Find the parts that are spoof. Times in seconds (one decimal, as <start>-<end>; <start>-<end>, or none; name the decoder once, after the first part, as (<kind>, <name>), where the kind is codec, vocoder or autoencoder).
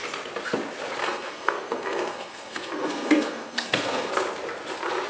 1.0-4.1 (codec, SNAC)